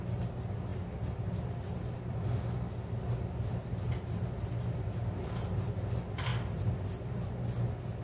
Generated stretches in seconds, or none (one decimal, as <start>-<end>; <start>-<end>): 0.7-1.8